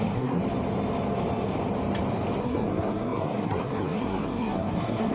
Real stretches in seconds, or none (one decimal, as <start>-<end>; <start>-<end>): 0.4-2.4